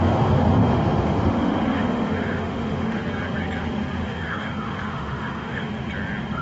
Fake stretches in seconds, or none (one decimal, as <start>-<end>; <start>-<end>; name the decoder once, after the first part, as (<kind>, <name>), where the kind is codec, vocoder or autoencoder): 0.6-3.0 (autoencoder, DAC-VAE); 4.0-5.7